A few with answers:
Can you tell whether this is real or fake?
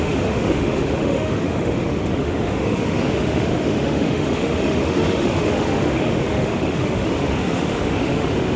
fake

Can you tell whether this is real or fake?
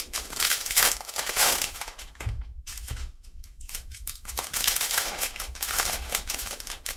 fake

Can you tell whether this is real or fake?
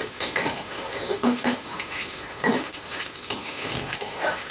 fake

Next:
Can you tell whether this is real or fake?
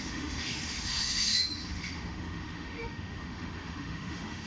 fake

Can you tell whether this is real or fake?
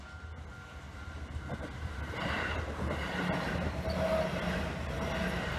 real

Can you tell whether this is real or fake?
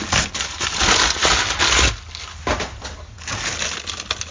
real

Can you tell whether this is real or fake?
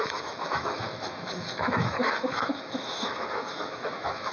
fake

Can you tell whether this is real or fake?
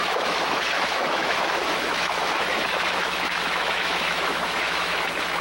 fake